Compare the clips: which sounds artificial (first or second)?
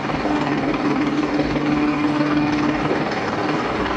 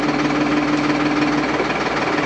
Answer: first